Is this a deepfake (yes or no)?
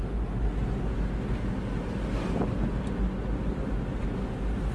no